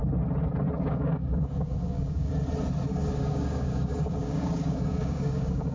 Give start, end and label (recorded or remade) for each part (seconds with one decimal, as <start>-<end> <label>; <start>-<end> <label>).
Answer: 0.0-0.8 recorded; 0.8-2.3 remade; 2.3-2.9 recorded; 2.9-5.7 remade